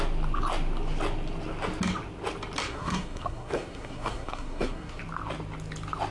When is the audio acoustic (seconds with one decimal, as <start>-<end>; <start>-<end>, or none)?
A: 0.0-2.6; 5.0-6.1